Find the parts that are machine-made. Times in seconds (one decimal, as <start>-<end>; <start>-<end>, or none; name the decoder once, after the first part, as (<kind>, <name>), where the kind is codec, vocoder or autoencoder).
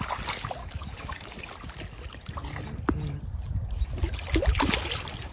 0.6-1.4 (codec, DAC)